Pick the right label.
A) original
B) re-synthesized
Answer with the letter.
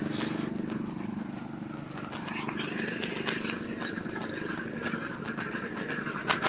A